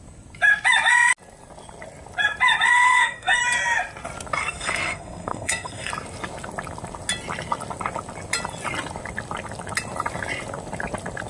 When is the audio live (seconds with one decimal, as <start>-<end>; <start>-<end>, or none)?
0.0-2.7; 3.4-4.4; 5.9-11.3